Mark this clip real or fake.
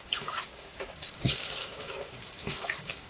fake